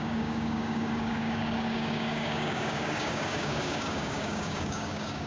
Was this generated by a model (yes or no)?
yes